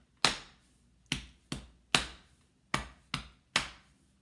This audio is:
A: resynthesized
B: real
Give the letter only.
B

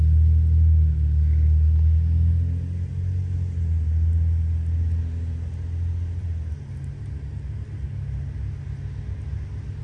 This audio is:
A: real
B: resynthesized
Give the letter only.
A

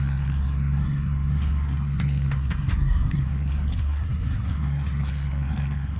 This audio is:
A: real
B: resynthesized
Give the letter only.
B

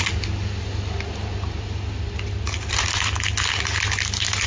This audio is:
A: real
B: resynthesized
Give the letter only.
A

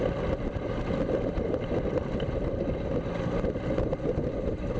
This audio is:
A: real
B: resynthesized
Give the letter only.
A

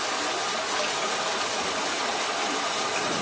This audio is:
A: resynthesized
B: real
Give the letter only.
B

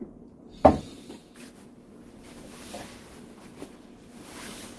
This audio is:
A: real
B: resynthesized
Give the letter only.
A